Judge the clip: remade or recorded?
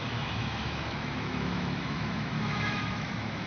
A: remade